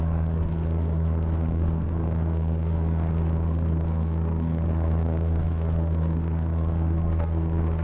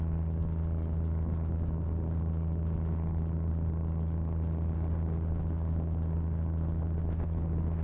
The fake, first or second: first